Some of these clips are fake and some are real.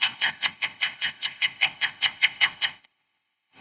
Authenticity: fake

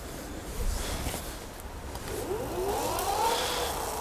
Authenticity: real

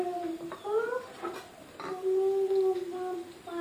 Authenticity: real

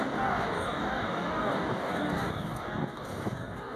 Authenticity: fake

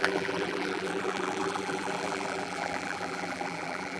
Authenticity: fake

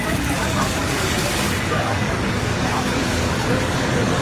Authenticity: fake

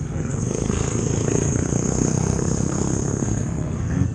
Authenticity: fake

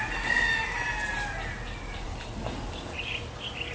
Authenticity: real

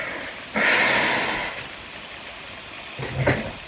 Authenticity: real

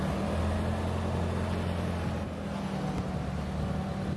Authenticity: real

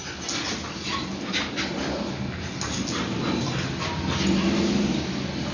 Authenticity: real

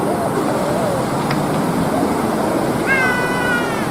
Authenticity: real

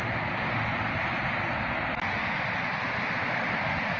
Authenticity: real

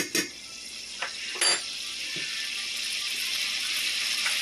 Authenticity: real